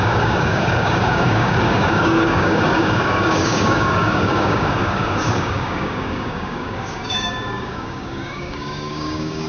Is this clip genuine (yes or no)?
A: no